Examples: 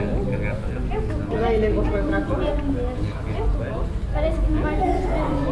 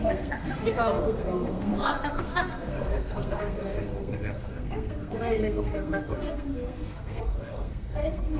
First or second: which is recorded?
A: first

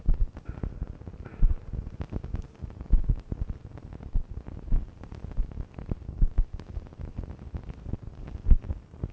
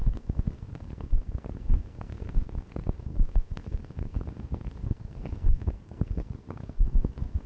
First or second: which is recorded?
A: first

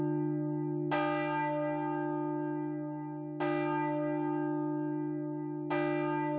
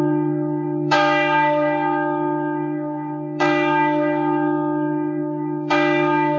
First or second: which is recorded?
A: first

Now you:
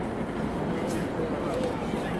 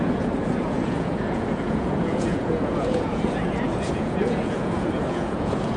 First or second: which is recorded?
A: first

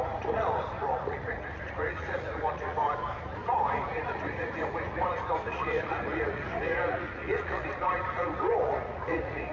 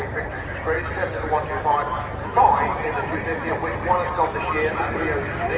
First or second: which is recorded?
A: second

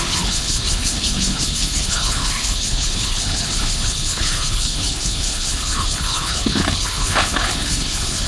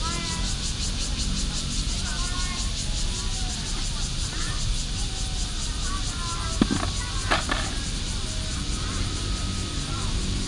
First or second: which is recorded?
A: second